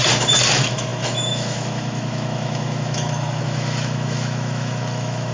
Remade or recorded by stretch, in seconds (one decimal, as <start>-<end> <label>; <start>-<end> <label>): 0.0-0.5 recorded; 0.5-5.3 remade